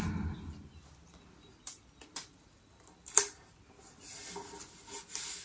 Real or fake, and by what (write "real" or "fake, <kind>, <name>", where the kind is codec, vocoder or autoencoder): real